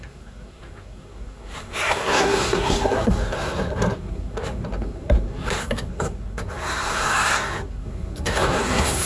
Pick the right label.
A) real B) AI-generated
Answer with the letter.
B